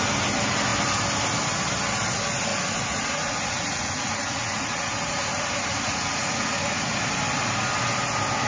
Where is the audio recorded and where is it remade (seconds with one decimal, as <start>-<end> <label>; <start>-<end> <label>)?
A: 0.0-2.5 recorded; 2.5-7.0 remade; 7.0-8.5 recorded